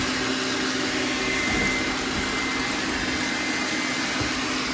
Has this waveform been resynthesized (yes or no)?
no